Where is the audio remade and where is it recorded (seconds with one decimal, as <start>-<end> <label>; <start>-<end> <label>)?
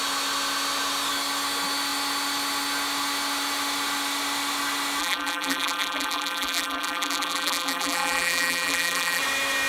0.0-5.0 recorded; 5.0-9.2 remade; 9.2-9.7 recorded